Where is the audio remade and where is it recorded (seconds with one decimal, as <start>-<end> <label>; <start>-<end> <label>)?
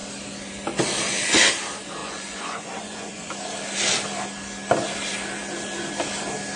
0.0-2.0 recorded; 2.0-3.3 remade; 3.3-6.6 recorded